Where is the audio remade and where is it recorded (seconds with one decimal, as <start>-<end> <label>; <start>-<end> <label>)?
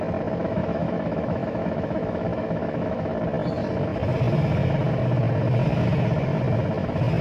0.0-0.4 recorded; 0.4-3.1 remade; 3.1-7.2 recorded